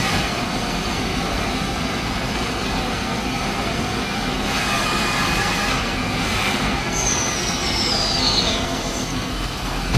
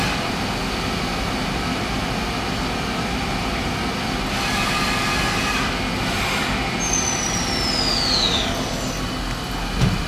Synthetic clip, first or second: first